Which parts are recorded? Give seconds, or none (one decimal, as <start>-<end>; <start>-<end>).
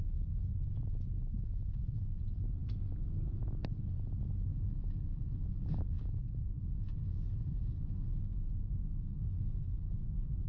0.0-4.5; 8.1-10.5